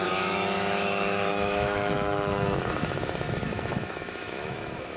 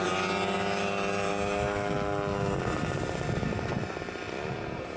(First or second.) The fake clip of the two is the first